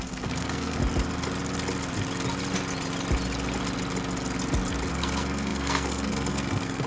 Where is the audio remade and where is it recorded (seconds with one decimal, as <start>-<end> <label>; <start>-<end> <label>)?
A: 0.0-0.8 remade; 0.8-4.9 recorded; 4.9-6.9 remade